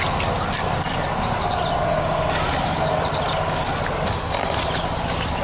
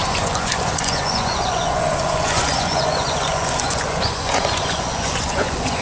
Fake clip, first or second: second